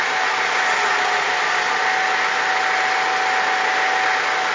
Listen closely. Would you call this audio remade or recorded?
recorded